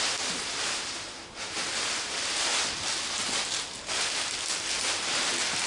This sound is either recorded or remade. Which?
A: recorded